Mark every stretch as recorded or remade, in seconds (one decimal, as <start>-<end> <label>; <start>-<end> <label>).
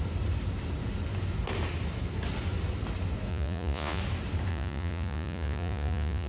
0.0-3.3 recorded; 3.3-4.0 remade; 4.0-4.5 recorded; 4.5-6.3 remade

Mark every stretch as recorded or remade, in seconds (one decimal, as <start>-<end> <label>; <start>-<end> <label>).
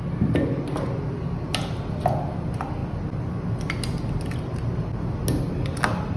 0.0-6.2 recorded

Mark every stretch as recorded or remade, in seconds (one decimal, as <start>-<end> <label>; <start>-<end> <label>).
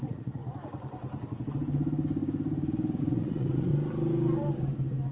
0.0-0.4 remade; 0.4-3.0 recorded; 3.0-3.7 remade; 3.7-5.1 recorded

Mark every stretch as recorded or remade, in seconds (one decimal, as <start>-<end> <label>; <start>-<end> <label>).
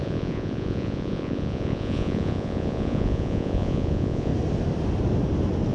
0.0-4.3 remade; 4.3-5.7 recorded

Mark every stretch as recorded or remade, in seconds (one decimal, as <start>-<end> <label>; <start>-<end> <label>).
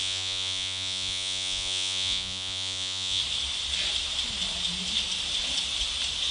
0.0-3.2 remade; 3.2-6.3 recorded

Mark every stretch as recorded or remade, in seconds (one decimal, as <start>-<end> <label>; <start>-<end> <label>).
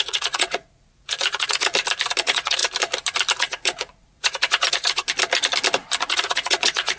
0.0-1.7 remade; 1.7-2.2 recorded; 2.2-2.6 remade; 2.6-3.4 recorded; 3.4-5.0 remade; 5.0-6.0 recorded; 6.0-7.0 remade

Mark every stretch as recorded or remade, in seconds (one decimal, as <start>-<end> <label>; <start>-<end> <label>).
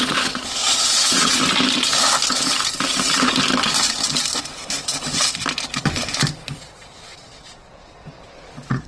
0.0-1.4 remade; 1.4-6.6 recorded; 6.6-8.9 remade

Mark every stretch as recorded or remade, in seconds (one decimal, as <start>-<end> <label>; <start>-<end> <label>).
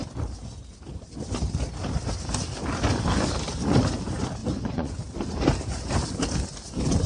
0.0-4.4 recorded; 4.4-5.0 remade; 5.0-7.1 recorded